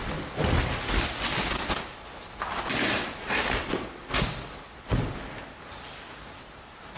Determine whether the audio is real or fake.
real